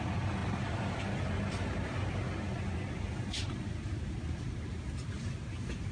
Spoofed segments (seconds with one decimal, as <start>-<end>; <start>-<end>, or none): none